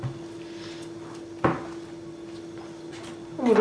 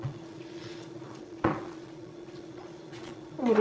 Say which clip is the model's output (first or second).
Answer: second